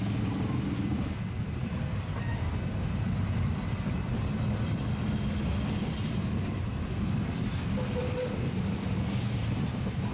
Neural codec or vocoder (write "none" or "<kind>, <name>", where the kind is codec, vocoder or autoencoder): none